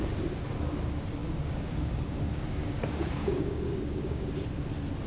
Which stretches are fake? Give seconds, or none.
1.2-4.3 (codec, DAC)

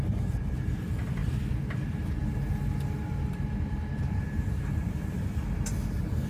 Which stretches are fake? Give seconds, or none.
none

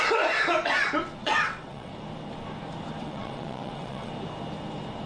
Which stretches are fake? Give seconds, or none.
1.2-1.9 (vocoder, WaveNeXt); 3.0-4.1

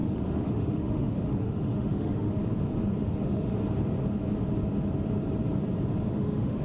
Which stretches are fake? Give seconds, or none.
0.0-2.4 (autoencoder, DAC-VAE); 3.0-3.5; 6.1-6.6

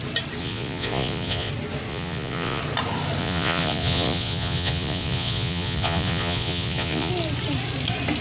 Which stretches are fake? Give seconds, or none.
0.4-1.5 (vocoder, Vocos); 1.9-2.6; 3.2-7.1

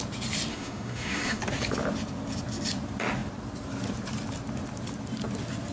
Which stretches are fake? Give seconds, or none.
0.5-1.4 (autoencoder, DAC-VAE)

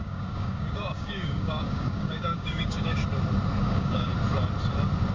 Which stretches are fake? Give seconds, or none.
0.0-3.0 (codec, DAC); 3.6-4.1

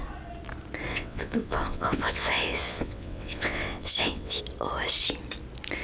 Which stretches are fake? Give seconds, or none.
0.9-4.4 (vocoder, WaveNeXt)